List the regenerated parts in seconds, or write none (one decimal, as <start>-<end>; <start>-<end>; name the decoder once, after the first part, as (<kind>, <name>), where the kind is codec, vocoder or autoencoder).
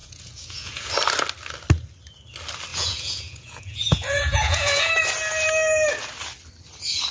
0.0-0.9 (vocoder, Vocos); 2.7-4.9